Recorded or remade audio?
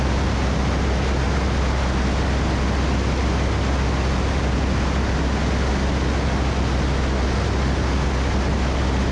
recorded